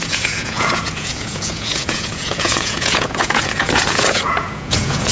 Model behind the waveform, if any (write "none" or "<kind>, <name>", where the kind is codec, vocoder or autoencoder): vocoder, Vocos